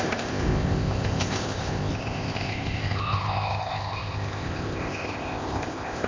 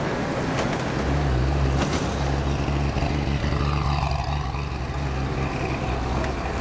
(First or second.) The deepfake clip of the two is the first